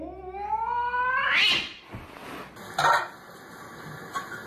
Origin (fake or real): real